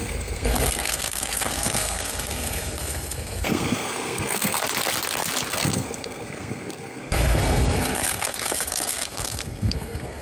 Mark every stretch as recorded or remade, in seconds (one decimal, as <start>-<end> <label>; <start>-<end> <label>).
0.0-4.6 remade; 4.6-5.5 recorded; 5.5-10.2 remade

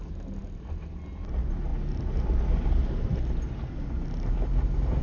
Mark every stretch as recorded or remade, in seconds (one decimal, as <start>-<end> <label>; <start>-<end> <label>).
0.0-5.0 recorded

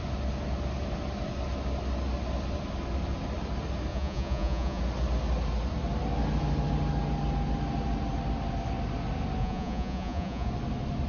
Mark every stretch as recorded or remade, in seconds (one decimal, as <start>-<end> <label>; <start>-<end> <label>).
0.0-3.9 recorded; 3.9-4.8 remade; 4.8-9.4 recorded; 9.4-10.5 remade; 10.5-11.1 recorded

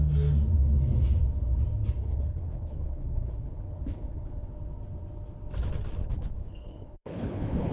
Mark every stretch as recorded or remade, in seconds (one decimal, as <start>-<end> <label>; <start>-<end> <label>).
0.0-2.0 recorded; 2.0-4.5 remade; 4.5-6.0 recorded; 6.0-7.7 remade

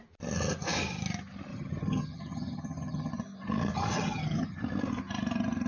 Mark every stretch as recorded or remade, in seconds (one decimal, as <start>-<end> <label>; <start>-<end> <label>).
0.0-1.5 recorded; 1.5-3.1 remade; 3.1-3.9 recorded; 3.9-4.6 remade; 4.6-5.7 recorded

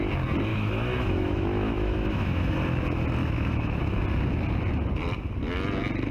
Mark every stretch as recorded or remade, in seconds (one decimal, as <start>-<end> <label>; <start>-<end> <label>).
0.0-0.5 recorded; 0.5-2.5 remade; 2.5-3.2 recorded; 3.2-3.8 remade; 3.8-6.1 recorded

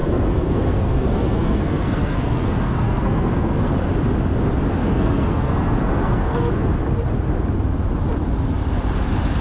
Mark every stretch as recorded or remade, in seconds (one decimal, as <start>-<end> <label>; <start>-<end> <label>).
0.0-3.7 remade; 3.7-4.8 recorded; 4.8-6.5 remade; 6.5-9.4 recorded